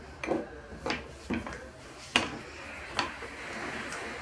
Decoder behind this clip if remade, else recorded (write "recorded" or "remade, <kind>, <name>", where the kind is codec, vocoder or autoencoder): recorded